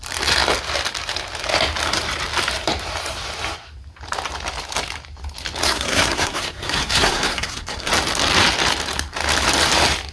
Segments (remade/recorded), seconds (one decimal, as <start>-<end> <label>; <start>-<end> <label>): 0.0-5.6 recorded; 5.6-7.9 remade; 7.9-10.1 recorded